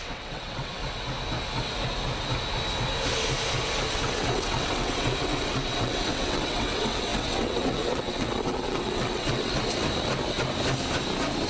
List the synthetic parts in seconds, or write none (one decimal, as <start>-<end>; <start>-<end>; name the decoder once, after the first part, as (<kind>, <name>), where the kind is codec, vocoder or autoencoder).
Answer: 0.0-0.8 (vocoder, WaveNeXt); 3.9-9.5